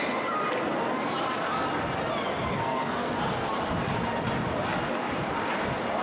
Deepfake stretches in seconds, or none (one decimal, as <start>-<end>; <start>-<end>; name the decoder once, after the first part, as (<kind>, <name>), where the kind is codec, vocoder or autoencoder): 2.6-3.2 (codec, SNAC)